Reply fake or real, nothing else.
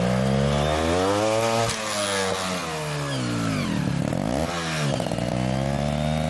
real